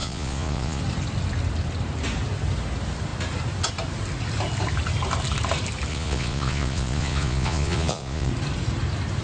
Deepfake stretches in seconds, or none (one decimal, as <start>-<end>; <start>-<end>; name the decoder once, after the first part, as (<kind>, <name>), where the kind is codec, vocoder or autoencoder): 0.0-0.8 (vocoder, Vocos); 5.9-8.3

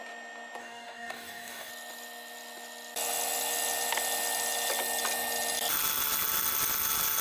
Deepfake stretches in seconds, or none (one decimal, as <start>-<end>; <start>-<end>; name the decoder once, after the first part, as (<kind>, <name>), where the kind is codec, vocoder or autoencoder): 0.6-1.7 (codec, DAC)

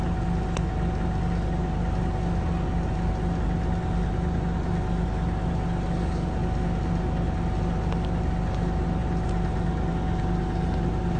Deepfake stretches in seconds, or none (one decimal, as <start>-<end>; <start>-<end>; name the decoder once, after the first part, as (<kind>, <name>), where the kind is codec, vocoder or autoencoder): none

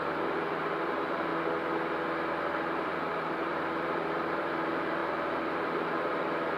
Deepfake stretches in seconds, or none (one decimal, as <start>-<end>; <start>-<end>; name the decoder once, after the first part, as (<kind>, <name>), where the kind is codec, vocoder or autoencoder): 0.0-1.3 (vocoder, BigVGAN v2); 2.5-6.6